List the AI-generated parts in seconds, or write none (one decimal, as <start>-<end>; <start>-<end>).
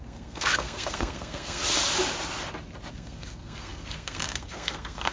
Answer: 0.0-1.6; 2.9-5.1